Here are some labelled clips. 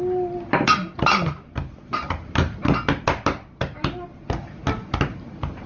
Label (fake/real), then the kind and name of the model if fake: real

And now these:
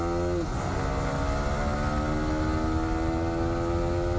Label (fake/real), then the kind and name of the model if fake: real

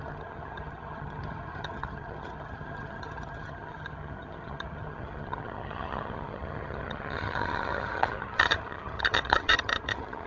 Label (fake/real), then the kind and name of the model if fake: fake, vocoder, HiFi-GAN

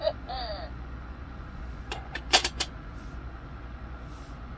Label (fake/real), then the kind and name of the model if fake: fake, vocoder, Vocos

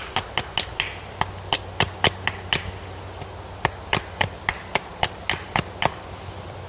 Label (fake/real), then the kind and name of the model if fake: real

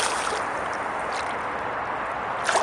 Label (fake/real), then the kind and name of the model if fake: fake, vocoder, BigVGAN v2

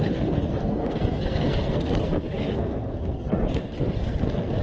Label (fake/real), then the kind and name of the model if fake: fake, codec, SNAC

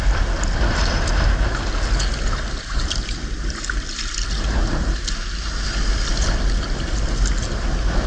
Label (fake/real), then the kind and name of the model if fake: real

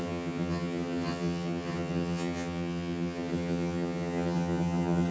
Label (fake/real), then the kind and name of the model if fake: fake, vocoder, HiFi-GAN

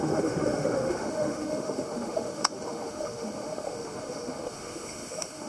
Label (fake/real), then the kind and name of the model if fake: fake, autoencoder, DAC-VAE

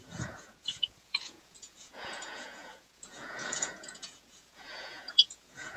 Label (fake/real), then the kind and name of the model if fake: fake, vocoder, Vocos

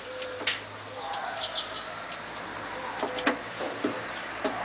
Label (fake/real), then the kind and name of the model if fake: real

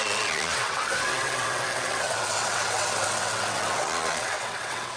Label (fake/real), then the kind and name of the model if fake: fake, vocoder, WaveNeXt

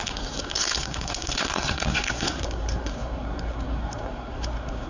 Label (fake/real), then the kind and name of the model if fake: fake, codec, SNAC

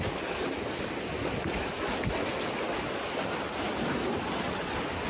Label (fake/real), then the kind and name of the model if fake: real